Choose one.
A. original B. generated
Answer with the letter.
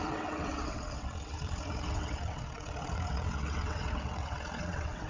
B